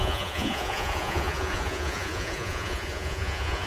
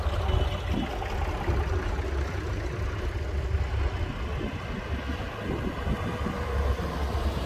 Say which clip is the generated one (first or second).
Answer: first